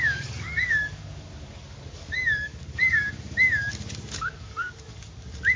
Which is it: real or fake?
fake